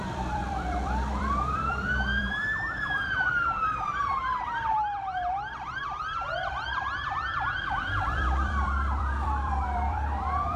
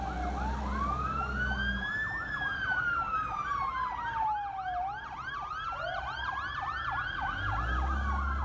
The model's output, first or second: first